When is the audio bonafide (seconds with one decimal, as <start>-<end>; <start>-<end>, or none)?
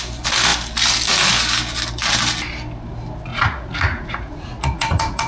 0.0-3.3